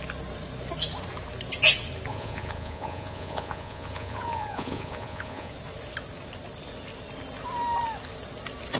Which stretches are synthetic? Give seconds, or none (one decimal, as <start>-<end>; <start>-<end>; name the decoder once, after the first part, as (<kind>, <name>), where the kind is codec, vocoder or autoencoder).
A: 2.1-5.5 (vocoder, Vocos)